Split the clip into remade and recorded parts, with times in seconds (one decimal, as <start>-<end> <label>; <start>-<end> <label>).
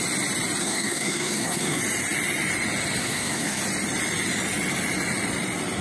0.0-0.6 recorded; 0.6-1.8 remade; 1.8-3.0 recorded; 3.0-3.6 remade; 3.6-5.8 recorded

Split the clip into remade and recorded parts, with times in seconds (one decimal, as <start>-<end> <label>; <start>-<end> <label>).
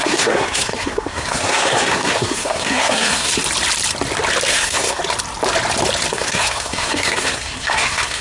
0.0-3.3 remade; 3.3-4.5 recorded; 4.5-5.0 remade; 5.0-6.1 recorded; 6.1-8.2 remade